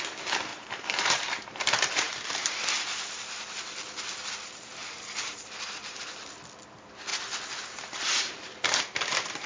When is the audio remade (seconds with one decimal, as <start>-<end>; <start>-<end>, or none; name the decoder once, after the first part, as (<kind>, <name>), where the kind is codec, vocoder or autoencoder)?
0.5-2.8 (vocoder, BigVGAN v2); 4.8-6.0; 7.1-9.5